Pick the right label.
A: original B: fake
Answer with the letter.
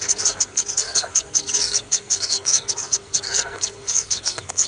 B